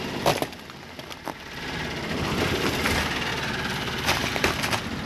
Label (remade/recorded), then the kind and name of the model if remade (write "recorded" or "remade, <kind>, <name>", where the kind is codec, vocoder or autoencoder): recorded